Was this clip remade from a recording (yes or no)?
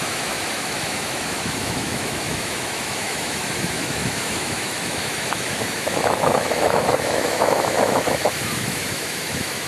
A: yes